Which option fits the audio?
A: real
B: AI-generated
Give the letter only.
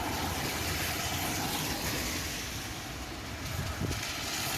A